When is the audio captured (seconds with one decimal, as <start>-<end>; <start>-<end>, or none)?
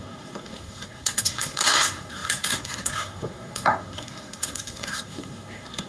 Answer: none